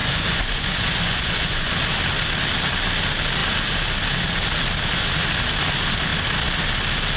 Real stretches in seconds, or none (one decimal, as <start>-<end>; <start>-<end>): 1.7-7.2